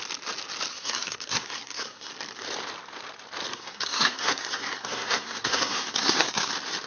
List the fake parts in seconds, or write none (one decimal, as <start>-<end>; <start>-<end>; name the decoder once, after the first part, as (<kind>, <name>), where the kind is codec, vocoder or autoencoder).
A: 0.7-2.1 (codec, SNAC); 3.5-6.5